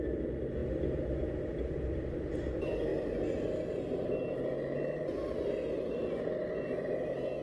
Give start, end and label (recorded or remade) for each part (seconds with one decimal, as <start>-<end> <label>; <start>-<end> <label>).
0.0-7.4 recorded